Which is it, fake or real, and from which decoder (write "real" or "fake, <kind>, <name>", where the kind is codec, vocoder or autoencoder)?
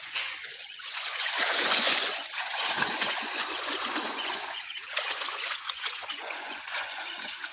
fake, vocoder, Vocos